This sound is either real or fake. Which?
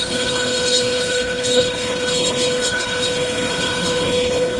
fake